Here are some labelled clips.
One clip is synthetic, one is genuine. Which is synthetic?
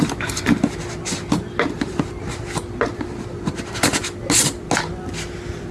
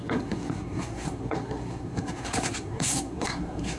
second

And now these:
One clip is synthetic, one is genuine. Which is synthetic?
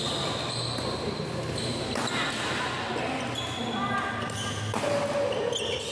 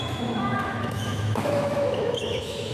second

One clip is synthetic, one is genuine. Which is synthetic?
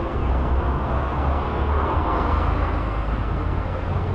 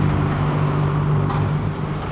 first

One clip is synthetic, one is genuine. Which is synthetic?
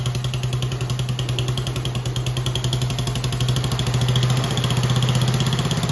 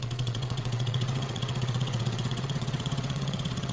second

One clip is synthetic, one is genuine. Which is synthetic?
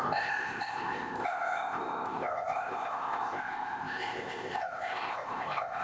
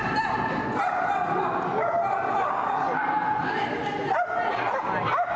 first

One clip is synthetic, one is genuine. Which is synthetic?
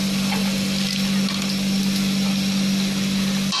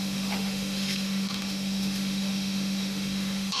second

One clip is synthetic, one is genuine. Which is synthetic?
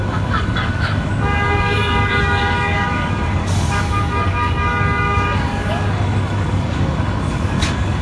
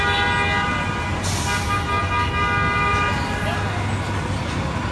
first